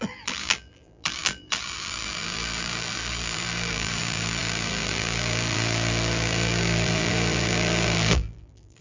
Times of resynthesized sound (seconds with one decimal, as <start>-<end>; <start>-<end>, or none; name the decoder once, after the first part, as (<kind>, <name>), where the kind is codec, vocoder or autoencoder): 0.0-8.8 (vocoder, BigVGAN v2)